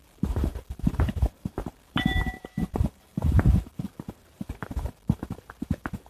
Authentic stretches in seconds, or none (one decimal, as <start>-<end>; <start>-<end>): none